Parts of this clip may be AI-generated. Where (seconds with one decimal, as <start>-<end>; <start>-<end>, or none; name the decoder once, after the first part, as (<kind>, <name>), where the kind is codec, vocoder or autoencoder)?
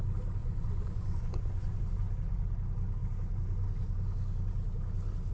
0.4-1.8 (vocoder, Vocos)